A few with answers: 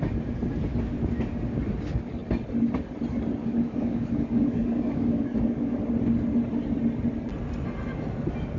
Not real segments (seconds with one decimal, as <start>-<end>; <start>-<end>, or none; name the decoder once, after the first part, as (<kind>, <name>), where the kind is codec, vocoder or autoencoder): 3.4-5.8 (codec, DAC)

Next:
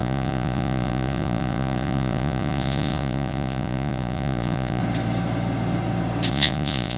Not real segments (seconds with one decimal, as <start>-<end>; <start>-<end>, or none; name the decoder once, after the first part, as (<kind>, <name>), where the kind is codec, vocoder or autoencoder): 0.0-4.8 (vocoder, Vocos); 6.3-7.0

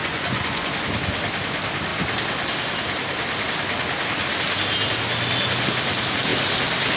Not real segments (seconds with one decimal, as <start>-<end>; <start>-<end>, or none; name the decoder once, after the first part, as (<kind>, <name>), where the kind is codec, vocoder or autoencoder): 0.0-0.7 (vocoder, Vocos)

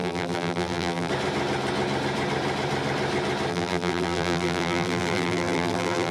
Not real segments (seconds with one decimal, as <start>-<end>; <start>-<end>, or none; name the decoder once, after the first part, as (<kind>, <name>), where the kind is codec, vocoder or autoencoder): 0.0-1.1 (vocoder, BigVGAN v2); 3.5-6.1

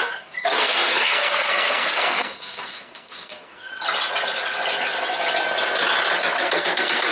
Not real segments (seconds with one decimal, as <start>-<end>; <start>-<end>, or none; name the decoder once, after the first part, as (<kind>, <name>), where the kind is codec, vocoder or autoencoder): 0.0-3.7 (codec, SNAC); 6.4-7.1

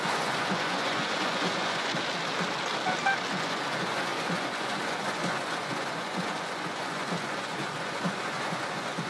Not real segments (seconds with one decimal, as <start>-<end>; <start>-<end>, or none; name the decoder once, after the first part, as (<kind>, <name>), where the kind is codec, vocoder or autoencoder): 0.0-1.9 (vocoder, Vocos); 3.3-9.1

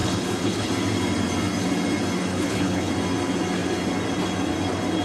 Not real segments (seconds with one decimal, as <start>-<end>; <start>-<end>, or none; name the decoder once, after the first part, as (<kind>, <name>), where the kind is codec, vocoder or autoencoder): 0.0-0.7 (codec, HILCodec); 2.3-2.9